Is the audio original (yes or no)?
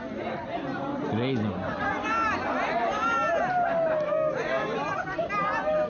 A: yes